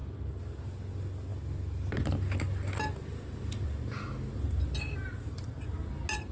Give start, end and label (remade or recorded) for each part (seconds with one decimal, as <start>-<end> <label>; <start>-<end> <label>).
0.0-6.3 recorded